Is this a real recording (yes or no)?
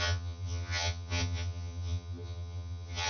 no